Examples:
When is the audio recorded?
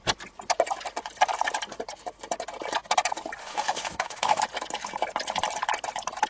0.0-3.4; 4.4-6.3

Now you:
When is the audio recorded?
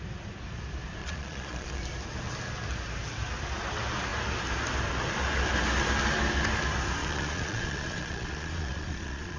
0.0-1.0; 1.8-7.0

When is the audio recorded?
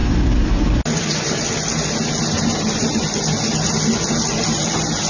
0.0-5.1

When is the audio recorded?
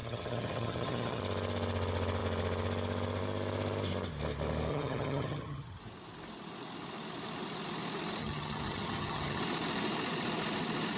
1.2-4.7; 5.8-8.2; 9.4-11.0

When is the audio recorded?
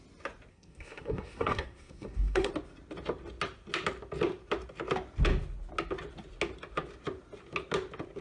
0.0-0.5; 2.5-8.2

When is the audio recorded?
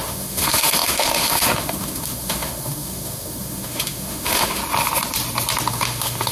4.6-5.7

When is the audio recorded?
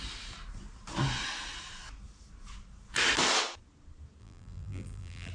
0.0-4.2